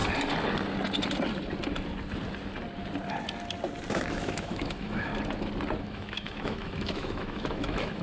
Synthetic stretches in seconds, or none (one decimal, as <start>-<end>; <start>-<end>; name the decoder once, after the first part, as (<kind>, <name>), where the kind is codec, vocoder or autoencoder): 3.9-5.1 (autoencoder, DAC-VAE); 5.8-8.0